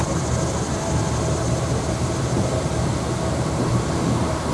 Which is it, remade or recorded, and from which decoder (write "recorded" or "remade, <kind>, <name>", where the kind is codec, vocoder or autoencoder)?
remade, vocoder, BigVGAN v2